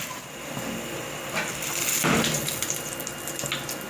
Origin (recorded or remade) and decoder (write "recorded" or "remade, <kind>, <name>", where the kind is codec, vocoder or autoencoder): remade, vocoder, BigVGAN v2